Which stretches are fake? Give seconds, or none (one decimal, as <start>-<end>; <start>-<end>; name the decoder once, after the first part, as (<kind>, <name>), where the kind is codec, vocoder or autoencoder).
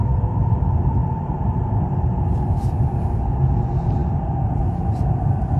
0.0-3.2 (vocoder, BigVGAN v2)